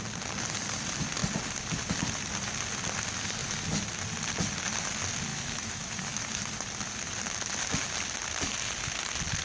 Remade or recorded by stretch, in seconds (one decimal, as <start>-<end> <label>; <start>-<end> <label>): 0.0-5.3 recorded; 5.3-6.2 remade; 6.2-9.4 recorded

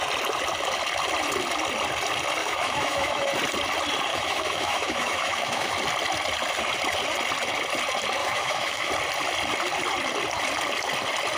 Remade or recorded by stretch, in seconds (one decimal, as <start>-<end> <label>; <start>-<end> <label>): 0.0-2.4 recorded; 2.4-3.3 remade; 3.3-4.1 recorded; 4.1-5.7 remade; 5.7-8.2 recorded; 8.2-8.9 remade; 8.9-11.4 recorded

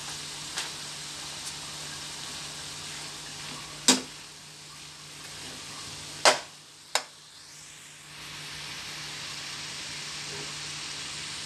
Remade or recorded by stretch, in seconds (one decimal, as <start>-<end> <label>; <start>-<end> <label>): 0.0-11.5 recorded

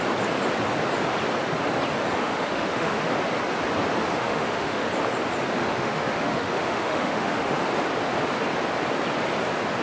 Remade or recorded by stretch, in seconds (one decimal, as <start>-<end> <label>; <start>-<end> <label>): 0.0-2.2 recorded; 2.2-3.1 remade; 3.1-4.1 recorded; 4.1-4.9 remade; 4.9-5.6 recorded; 5.6-7.6 remade; 7.6-9.8 recorded